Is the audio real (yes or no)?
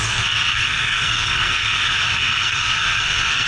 no